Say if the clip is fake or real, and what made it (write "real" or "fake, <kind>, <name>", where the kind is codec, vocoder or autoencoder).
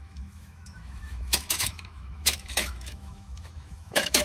fake, autoencoder, DAC-VAE